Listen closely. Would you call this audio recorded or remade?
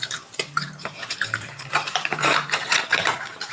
remade